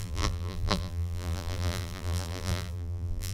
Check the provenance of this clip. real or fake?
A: fake